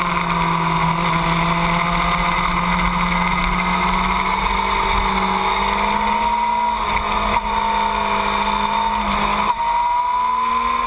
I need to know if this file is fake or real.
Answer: real